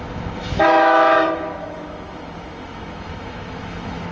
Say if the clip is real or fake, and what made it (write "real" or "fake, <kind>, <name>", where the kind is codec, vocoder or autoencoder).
fake, autoencoder, DAC-VAE